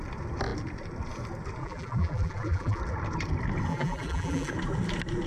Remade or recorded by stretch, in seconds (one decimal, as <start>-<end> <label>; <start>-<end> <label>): 0.0-1.6 recorded; 1.6-2.8 remade; 2.8-3.7 recorded; 3.7-4.5 remade; 4.5-5.3 recorded